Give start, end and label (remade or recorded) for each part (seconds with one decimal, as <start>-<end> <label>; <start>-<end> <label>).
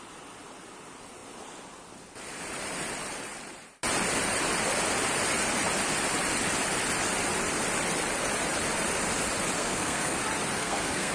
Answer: 0.0-9.6 recorded; 9.6-10.2 remade; 10.2-10.6 recorded; 10.6-11.1 remade